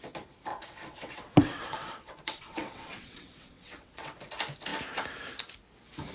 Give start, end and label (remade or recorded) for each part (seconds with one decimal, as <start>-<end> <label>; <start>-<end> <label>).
0.0-0.5 recorded; 0.5-4.2 remade; 4.2-6.1 recorded